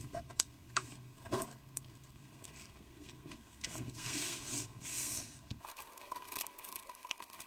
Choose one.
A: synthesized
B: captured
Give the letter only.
A